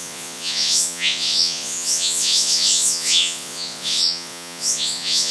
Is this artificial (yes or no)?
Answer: yes